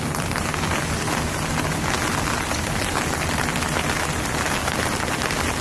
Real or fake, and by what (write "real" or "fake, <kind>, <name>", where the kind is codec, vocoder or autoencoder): real